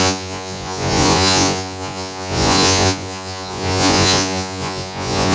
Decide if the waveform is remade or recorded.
remade